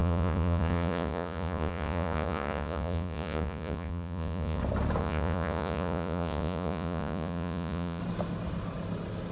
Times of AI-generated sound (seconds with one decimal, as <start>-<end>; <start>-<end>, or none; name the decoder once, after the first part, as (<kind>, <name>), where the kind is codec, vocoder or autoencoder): 0.0-4.6 (vocoder, Vocos); 5.0-8.0